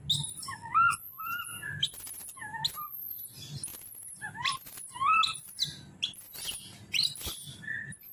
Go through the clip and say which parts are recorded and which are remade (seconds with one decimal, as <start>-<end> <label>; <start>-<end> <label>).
0.0-0.6 recorded; 0.6-1.2 remade; 1.2-8.1 recorded